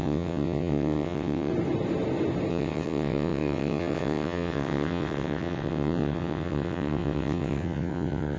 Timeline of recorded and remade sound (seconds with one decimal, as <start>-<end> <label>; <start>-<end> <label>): 0.0-1.5 remade; 1.5-2.5 recorded; 2.5-8.4 remade